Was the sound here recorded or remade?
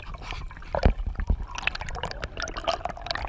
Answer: recorded